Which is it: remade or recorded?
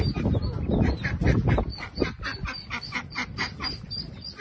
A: recorded